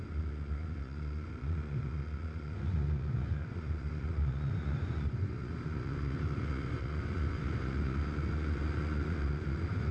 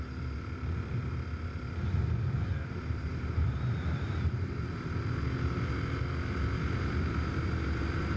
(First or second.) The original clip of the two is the second